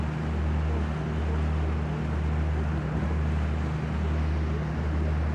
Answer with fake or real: real